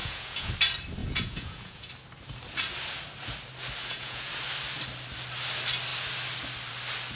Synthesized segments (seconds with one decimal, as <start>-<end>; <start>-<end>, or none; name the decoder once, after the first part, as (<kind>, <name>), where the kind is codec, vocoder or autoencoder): 0.0-0.5 (vocoder, Vocos); 1.0-1.9; 3.8-4.3